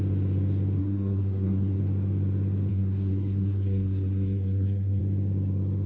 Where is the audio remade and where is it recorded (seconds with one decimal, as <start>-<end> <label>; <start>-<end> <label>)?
0.0-0.8 recorded; 0.8-1.8 remade; 1.8-2.7 recorded; 2.7-5.0 remade; 5.0-5.9 recorded